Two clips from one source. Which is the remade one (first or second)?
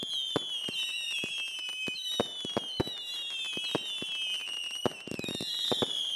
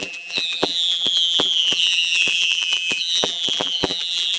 second